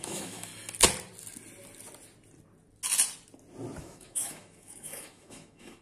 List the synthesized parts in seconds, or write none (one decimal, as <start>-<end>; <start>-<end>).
0.0-0.5; 3.8-5.8